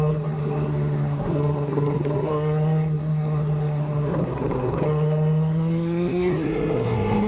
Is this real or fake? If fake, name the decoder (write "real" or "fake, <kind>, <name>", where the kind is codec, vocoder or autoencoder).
fake, codec, SNAC